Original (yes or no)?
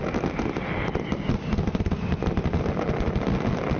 yes